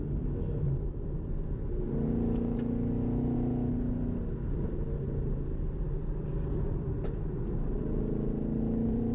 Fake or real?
real